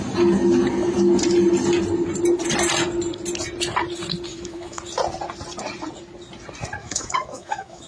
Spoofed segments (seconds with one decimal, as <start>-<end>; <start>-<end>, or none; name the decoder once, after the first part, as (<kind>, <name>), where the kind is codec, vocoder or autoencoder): 4.3-4.8 (autoencoder, DAC-VAE); 6.8-7.9